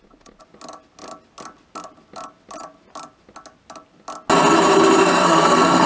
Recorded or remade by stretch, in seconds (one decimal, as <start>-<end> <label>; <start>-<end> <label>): 0.0-5.0 recorded; 5.0-5.9 remade